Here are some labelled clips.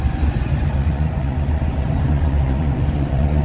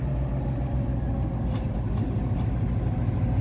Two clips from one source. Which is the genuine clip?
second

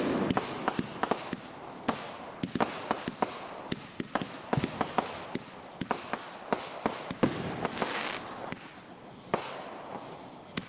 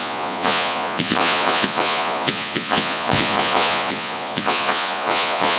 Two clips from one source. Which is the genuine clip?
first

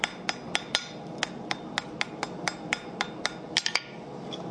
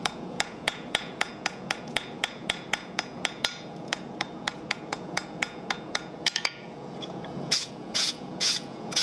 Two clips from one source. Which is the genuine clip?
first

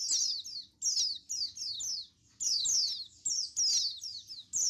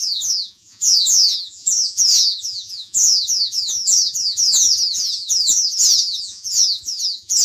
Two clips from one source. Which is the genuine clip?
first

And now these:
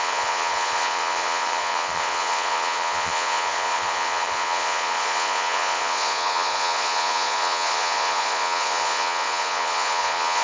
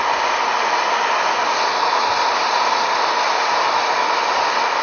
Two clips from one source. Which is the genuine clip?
second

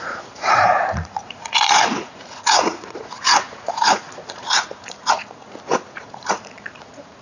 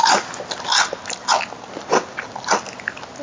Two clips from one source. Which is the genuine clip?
second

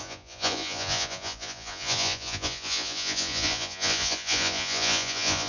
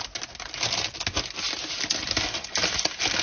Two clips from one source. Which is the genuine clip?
second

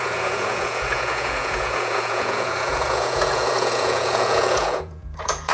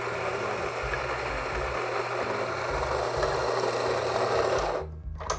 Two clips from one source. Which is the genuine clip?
second